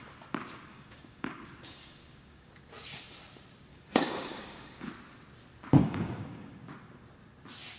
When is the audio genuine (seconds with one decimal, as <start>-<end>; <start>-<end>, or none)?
0.0-0.7; 2.5-3.7; 4.9-5.8; 6.6-7.8